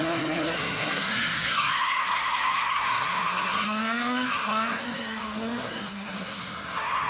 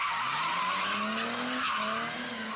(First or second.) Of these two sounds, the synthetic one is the first